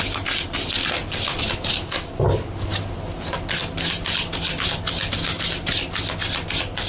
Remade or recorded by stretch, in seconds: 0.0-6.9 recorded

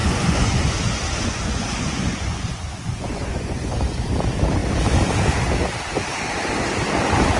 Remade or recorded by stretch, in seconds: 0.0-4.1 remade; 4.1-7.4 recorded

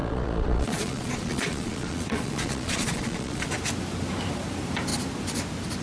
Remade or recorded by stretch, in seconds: 0.0-3.5 remade; 3.5-5.8 recorded

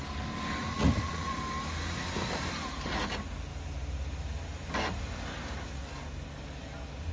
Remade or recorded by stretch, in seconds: 0.0-0.6 recorded; 0.6-1.4 remade; 1.4-7.1 recorded

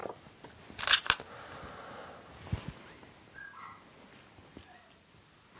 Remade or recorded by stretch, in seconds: 0.0-5.6 recorded

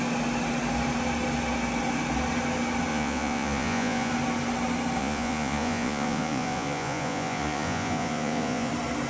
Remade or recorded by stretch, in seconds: 0.0-2.9 recorded; 2.9-4.1 remade; 4.1-5.0 recorded; 5.0-8.7 remade; 8.7-9.1 recorded

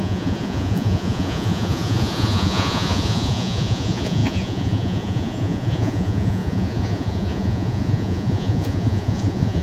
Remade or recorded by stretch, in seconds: 0.0-9.6 remade

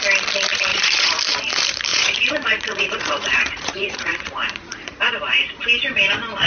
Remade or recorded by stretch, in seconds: 0.0-0.7 recorded; 0.7-1.2 remade; 1.2-1.9 recorded; 1.9-5.1 remade; 5.1-6.5 recorded